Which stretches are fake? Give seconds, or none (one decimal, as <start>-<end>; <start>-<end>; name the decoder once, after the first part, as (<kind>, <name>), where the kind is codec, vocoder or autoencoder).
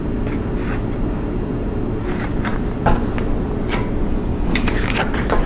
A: 4.0-5.0 (codec, DAC)